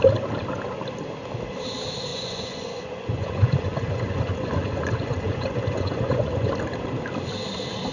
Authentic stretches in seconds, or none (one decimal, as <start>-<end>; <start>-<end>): 0.0-2.1; 6.5-7.9